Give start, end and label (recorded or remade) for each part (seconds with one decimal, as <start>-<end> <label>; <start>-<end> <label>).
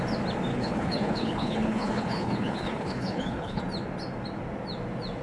0.0-0.5 recorded; 0.5-3.6 remade; 3.6-5.2 recorded